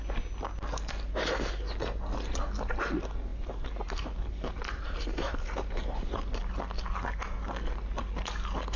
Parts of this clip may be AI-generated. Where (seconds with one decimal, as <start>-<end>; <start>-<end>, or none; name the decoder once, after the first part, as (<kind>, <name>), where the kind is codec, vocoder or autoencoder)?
3.3-6.5 (vocoder, BigVGAN v2)